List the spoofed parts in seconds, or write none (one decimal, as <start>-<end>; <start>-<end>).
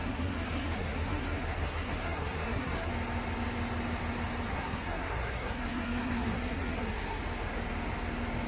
0.0-2.9; 4.5-7.2